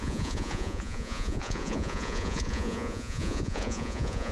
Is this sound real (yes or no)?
no